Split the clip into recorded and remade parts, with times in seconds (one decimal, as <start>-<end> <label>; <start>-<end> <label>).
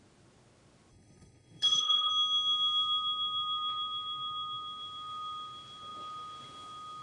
0.0-0.9 recorded; 0.9-2.1 remade; 2.1-7.0 recorded